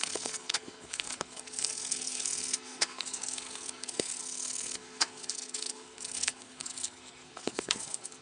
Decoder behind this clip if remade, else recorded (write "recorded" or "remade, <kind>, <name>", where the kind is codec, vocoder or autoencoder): remade, codec, SNAC